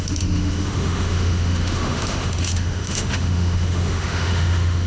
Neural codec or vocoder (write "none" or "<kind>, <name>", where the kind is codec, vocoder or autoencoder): autoencoder, DAC-VAE